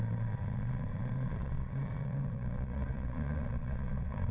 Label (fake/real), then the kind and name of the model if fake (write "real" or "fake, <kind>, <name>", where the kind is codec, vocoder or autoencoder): fake, vocoder, Vocos